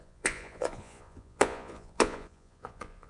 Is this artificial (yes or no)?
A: yes